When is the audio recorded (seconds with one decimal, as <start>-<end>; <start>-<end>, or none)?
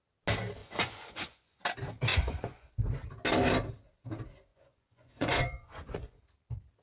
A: 0.0-0.6; 1.6-2.1; 2.7-4.5; 6.2-6.8